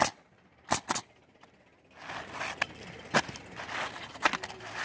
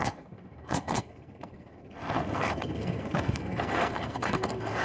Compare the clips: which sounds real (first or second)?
first